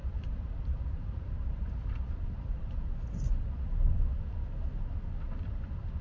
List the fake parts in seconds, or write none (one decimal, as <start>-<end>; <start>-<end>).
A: 0.0-3.6